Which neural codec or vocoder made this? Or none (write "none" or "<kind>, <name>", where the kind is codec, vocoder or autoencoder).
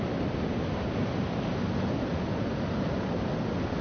none